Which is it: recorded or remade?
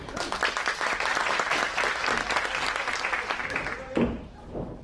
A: recorded